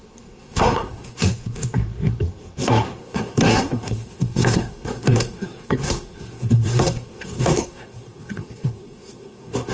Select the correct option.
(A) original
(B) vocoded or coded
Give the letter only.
B